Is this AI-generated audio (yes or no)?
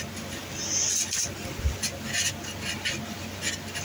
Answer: no